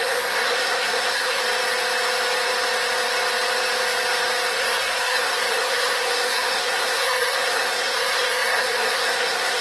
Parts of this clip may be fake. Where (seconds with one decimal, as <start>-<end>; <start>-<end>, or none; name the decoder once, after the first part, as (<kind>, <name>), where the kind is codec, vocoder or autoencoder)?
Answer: 0.0-1.4 (codec, SNAC); 4.5-9.6